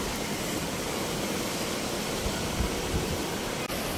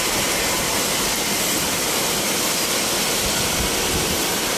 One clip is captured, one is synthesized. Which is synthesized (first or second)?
first